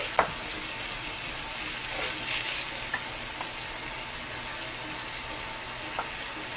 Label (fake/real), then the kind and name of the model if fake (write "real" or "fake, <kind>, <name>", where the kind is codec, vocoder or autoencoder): real